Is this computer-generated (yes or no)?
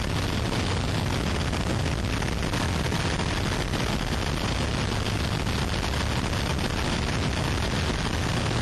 no